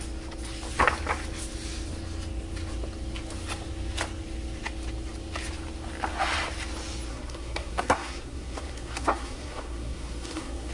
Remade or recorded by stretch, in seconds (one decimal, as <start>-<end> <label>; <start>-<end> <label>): 0.0-7.1 recorded; 7.1-10.7 remade